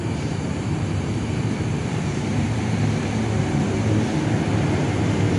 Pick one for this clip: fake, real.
fake